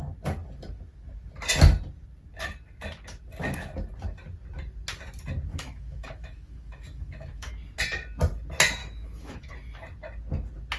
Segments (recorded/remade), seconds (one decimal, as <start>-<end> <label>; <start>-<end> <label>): 0.0-5.5 recorded; 5.5-7.5 remade; 7.5-8.8 recorded; 8.8-9.5 remade; 9.5-10.8 recorded

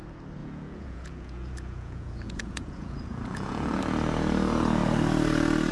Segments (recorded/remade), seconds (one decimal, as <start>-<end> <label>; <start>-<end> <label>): 0.0-0.4 recorded; 0.4-3.8 remade; 3.8-5.7 recorded

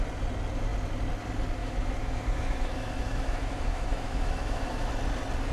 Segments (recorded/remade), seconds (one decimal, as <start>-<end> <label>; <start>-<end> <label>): 0.0-1.6 recorded; 1.6-4.9 remade; 4.9-5.5 recorded